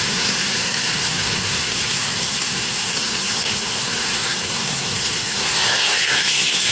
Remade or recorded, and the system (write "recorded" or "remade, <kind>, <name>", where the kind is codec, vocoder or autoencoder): remade, codec, SNAC